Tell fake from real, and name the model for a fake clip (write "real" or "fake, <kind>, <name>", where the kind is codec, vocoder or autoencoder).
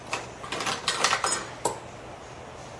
real